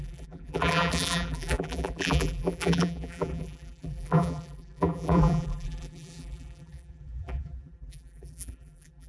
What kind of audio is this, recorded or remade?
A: remade